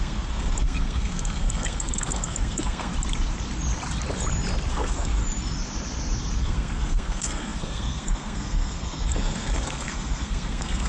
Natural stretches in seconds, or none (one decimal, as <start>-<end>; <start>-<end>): 2.9-4.7; 5.2-6.3